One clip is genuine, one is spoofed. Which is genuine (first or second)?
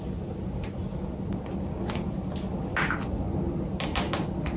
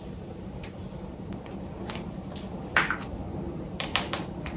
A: first